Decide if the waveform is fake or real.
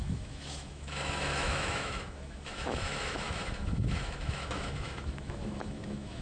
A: fake